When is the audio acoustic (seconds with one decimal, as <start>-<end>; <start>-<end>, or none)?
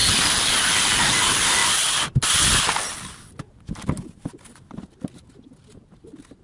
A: 0.0-6.4